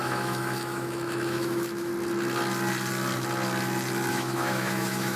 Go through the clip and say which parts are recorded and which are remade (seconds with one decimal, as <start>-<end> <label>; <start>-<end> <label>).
0.0-1.9 remade; 1.9-4.1 recorded; 4.1-5.2 remade